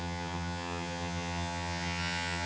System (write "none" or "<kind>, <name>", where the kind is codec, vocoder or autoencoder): vocoder, HiFi-GAN